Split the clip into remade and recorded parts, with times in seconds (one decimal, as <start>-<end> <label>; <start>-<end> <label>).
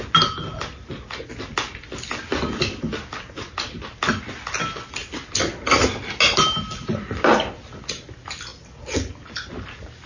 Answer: 0.0-10.1 recorded